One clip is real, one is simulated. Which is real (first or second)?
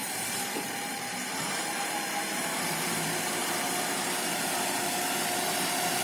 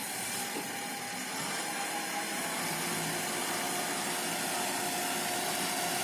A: second